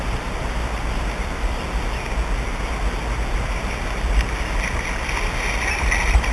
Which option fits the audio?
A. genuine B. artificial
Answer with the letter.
A